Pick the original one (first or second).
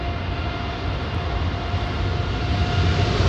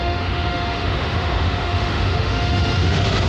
first